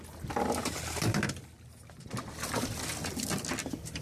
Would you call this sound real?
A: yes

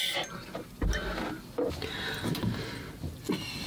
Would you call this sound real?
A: yes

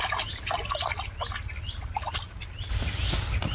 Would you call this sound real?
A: yes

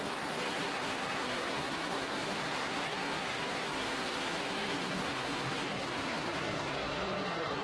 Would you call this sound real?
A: no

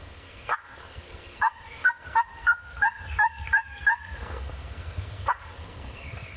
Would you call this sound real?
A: no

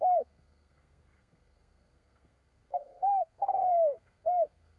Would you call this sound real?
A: no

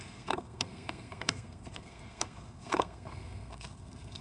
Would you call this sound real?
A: no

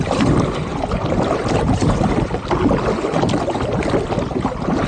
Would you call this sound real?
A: yes